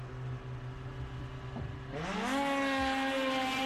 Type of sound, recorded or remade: recorded